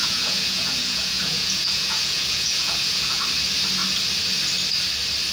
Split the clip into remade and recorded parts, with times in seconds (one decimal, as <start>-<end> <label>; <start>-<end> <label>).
0.0-3.2 remade; 3.2-5.3 recorded